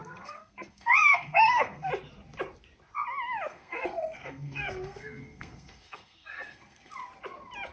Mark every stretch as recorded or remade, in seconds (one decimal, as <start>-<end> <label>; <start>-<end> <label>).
0.0-1.9 remade; 1.9-3.5 recorded; 3.5-6.9 remade; 6.9-7.7 recorded